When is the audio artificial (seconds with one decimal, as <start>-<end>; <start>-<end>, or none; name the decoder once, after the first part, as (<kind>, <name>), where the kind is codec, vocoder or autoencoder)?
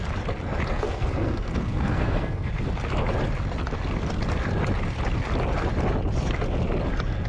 0.7-2.5 (codec, SNAC)